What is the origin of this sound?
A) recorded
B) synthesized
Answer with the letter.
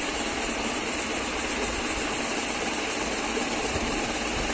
A